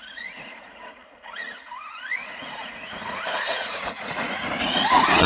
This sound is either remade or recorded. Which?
remade